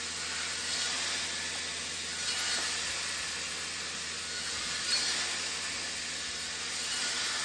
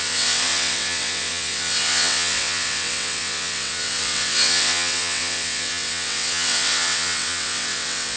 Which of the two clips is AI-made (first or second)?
second